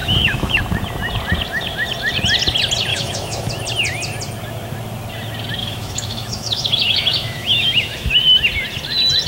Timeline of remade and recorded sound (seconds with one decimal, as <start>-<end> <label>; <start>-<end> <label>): 0.0-0.6 remade; 0.6-2.9 recorded; 2.9-3.5 remade; 3.5-5.6 recorded; 5.6-8.1 remade; 8.1-9.3 recorded